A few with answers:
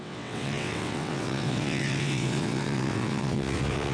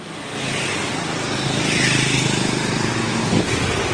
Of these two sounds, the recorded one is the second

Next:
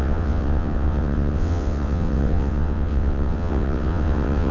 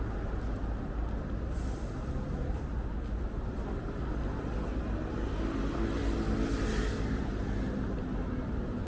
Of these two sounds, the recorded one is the second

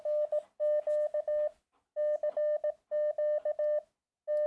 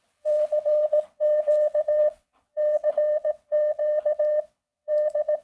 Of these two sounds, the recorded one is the first